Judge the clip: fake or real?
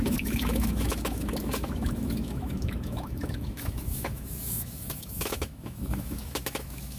fake